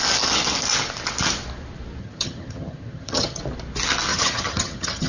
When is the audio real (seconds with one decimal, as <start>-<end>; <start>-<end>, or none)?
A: 0.0-2.0; 3.4-4.1